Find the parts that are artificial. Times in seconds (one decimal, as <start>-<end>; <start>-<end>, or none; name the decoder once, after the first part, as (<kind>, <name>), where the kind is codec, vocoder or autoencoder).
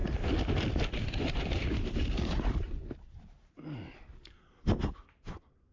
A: 0.0-3.4 (vocoder, BigVGAN v2)